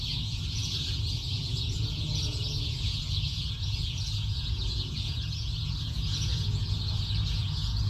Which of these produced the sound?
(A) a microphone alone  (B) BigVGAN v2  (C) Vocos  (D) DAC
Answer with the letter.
C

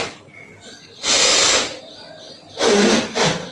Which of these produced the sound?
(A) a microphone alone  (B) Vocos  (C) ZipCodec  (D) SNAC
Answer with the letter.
A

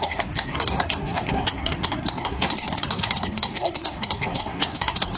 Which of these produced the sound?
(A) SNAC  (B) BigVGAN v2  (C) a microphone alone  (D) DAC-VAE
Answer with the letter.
A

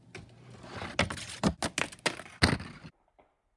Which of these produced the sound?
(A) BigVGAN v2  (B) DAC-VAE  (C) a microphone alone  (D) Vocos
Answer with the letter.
C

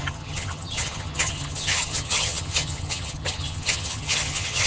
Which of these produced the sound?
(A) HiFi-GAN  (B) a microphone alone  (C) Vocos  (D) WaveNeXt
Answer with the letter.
A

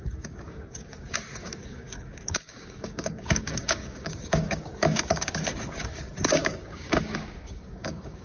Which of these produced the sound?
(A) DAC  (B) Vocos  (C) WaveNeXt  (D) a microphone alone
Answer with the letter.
A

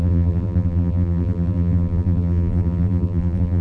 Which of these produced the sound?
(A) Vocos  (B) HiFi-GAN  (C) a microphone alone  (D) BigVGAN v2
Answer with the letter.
D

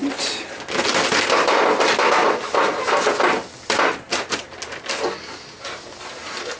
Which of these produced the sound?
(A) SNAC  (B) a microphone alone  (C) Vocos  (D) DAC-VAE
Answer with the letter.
B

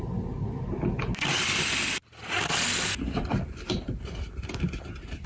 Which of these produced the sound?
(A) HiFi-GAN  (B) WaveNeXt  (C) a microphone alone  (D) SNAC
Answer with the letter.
C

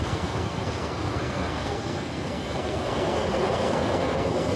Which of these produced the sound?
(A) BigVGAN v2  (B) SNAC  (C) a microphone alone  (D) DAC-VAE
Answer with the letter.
B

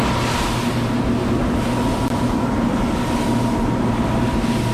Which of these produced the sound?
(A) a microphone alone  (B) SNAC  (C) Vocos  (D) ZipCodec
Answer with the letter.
A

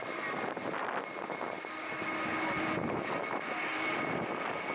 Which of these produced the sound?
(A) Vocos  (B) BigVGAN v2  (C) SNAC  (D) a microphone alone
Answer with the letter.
D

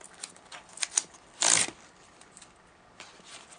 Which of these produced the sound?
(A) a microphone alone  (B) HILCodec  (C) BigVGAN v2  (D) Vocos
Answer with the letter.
A